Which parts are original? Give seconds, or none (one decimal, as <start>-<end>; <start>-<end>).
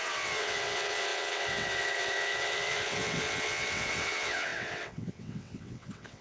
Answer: none